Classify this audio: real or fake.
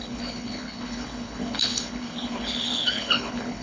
fake